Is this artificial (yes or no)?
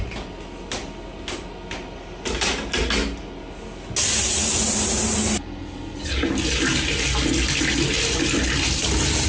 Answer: no